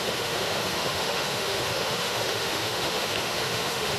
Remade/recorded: remade